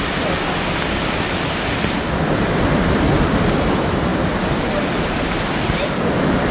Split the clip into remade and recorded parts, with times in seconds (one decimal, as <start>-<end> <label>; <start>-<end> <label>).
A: 0.0-6.5 recorded